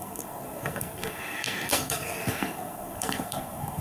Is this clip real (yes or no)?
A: no